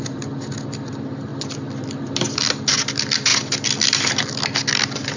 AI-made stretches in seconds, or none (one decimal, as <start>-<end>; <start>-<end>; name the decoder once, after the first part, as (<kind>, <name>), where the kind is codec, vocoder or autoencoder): none